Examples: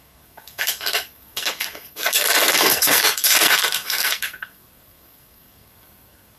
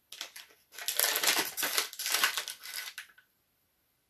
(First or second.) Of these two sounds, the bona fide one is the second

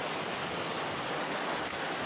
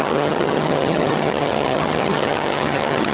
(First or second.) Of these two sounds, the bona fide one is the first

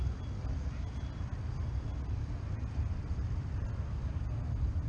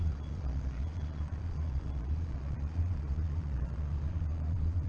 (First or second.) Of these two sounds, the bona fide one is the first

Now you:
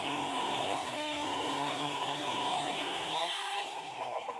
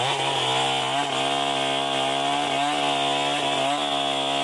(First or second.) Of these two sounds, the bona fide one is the second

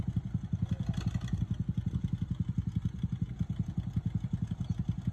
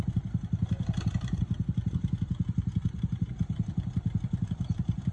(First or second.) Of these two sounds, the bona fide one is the first